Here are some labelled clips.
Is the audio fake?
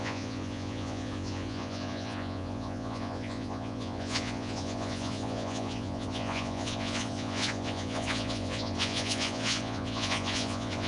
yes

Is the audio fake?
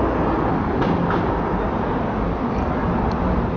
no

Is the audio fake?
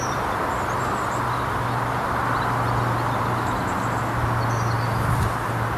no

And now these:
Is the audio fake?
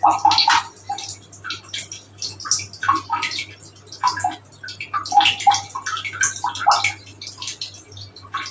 no